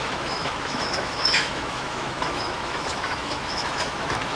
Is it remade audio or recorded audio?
remade